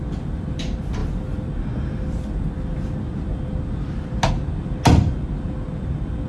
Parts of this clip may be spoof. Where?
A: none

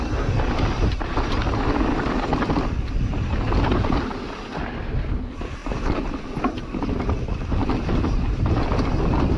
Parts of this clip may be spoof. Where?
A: 5.6-6.6 (vocoder, BigVGAN v2)

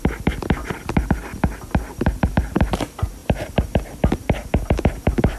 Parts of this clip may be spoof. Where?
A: 0.0-0.6 (vocoder, BigVGAN v2); 2.0-5.4

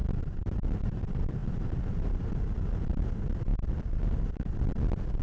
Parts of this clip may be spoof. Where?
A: 1.4-2.3 (vocoder, BigVGAN v2)

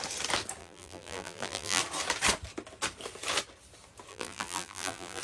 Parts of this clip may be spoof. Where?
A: 0.6-1.8 (vocoder, BigVGAN v2); 4.1-5.2

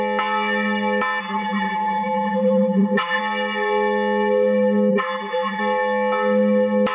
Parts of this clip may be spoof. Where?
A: 1.2-3.2 (vocoder, BigVGAN v2); 4.9-5.6

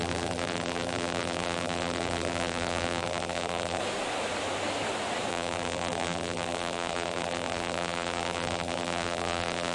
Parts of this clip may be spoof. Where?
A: 0.0-3.8 (vocoder, BigVGAN v2); 5.3-9.7